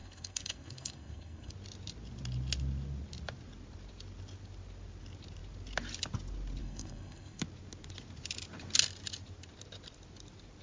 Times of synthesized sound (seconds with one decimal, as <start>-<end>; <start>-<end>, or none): 0.0-1.5; 6.6-7.4